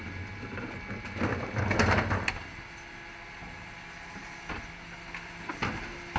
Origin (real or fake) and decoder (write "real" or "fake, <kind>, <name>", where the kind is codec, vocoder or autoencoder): real